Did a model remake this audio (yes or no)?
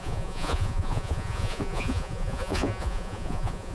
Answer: yes